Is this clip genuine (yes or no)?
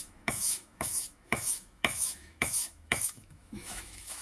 no